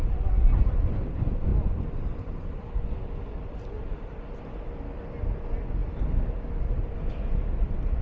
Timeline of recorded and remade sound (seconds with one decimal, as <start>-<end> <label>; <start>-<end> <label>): 0.0-8.0 recorded